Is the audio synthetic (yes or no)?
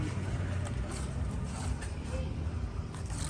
no